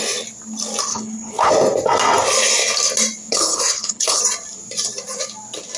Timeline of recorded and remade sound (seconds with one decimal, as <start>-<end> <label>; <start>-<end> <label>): 0.0-0.9 recorded; 0.9-1.5 remade; 1.5-3.3 recorded; 3.3-4.2 remade; 4.2-5.8 recorded